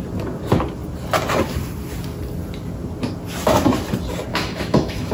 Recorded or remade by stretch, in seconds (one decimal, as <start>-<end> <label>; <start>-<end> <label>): 0.0-4.3 recorded; 4.3-5.1 remade